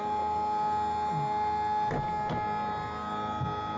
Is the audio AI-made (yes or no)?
no